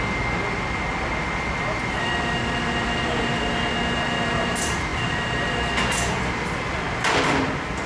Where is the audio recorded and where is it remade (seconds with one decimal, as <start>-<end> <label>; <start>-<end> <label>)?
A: 0.0-7.9 recorded